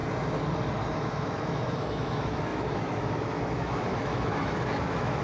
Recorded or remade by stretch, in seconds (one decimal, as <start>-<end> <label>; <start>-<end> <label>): 0.0-1.0 recorded; 1.0-5.2 remade